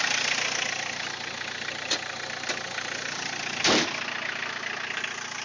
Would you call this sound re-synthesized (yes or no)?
no